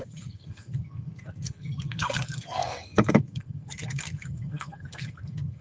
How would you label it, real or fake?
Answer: fake